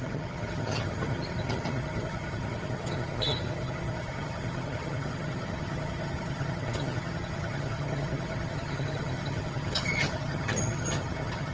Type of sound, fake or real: fake